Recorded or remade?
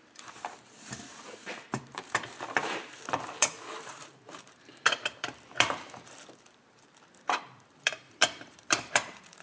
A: remade